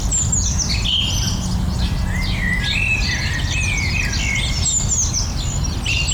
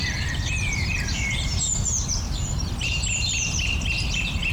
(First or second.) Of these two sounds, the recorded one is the first